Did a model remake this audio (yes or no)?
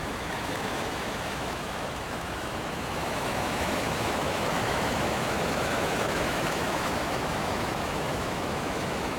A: yes